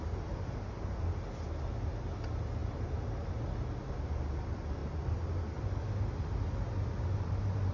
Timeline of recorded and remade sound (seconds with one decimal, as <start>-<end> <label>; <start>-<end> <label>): 0.0-7.7 recorded